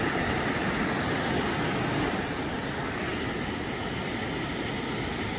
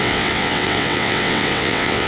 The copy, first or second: second